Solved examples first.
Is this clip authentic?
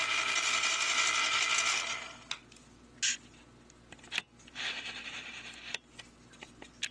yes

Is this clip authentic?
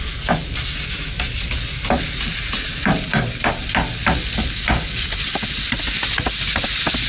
yes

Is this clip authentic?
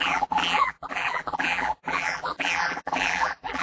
no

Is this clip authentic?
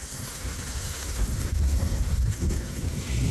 no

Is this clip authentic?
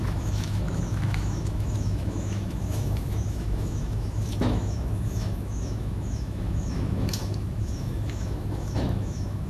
no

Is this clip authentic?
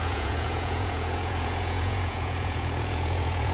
no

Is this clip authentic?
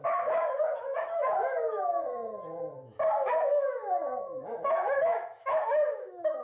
no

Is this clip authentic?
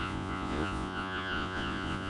no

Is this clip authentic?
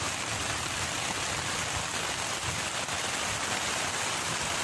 yes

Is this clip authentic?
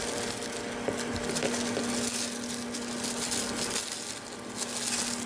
yes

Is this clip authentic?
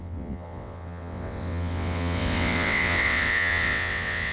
no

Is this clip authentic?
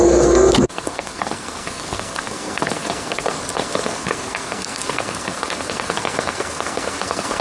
no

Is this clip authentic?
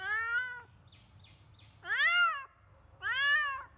yes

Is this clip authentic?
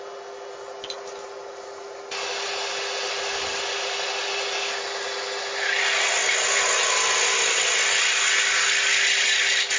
yes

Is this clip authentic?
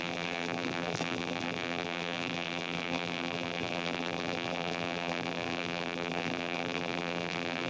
no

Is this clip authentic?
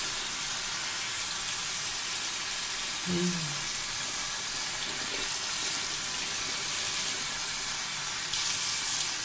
yes